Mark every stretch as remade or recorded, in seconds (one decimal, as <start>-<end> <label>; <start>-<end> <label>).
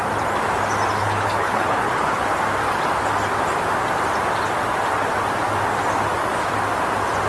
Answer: 0.0-1.0 recorded; 1.0-2.3 remade; 2.3-7.3 recorded